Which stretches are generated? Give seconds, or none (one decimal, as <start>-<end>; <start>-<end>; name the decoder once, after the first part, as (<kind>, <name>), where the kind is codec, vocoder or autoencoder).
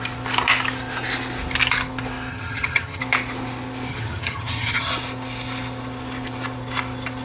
2.3-3.0 (vocoder, HiFi-GAN); 3.9-4.9